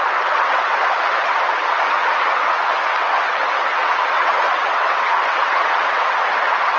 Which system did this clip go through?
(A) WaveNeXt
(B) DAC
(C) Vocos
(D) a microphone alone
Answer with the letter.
A